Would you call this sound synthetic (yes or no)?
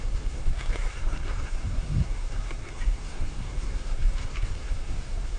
yes